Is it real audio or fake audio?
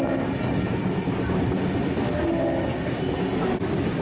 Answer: real